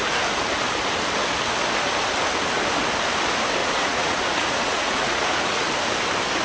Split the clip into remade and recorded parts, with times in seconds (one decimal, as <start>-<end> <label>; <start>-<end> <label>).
0.0-3.6 recorded; 3.6-5.7 remade; 5.7-6.4 recorded